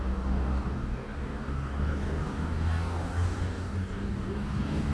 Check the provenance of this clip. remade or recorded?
remade